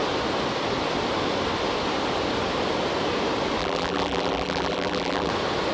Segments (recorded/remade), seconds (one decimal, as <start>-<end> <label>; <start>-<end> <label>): 0.0-3.6 recorded; 3.6-5.3 remade; 5.3-5.7 recorded